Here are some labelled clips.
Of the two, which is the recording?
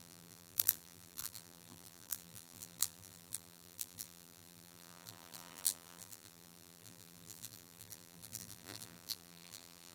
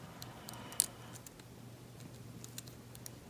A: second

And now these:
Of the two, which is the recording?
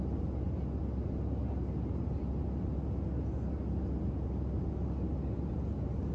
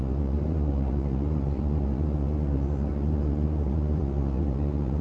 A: first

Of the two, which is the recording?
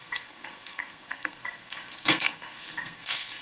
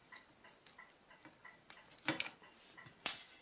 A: second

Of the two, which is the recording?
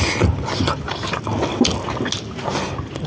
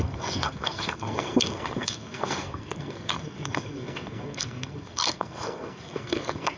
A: first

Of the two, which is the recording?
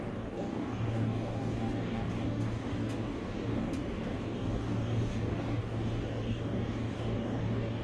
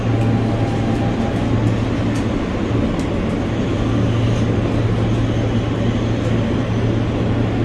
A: second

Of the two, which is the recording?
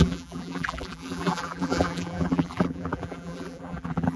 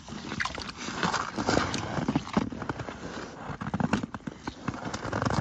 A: second